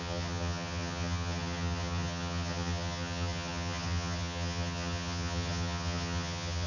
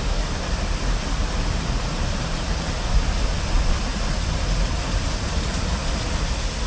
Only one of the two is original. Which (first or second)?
second